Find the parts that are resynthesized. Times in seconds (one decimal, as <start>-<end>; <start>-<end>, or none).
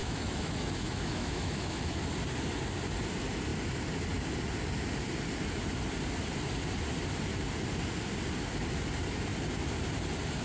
0.0-2.0